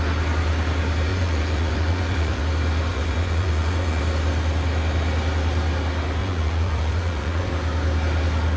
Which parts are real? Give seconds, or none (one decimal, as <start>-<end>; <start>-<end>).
0.0-1.1; 2.4-2.9; 4.0-6.2; 7.5-8.6